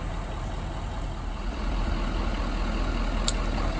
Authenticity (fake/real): real